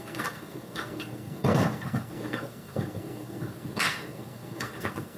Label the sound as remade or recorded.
remade